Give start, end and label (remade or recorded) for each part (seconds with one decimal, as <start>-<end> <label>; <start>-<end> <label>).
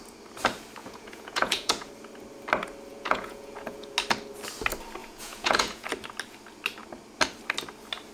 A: 0.0-0.8 recorded; 0.8-1.9 remade; 1.9-2.9 recorded; 2.9-3.9 remade; 3.9-5.0 recorded; 5.0-5.9 remade; 5.9-8.1 recorded